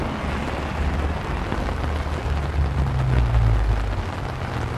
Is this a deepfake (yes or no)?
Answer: no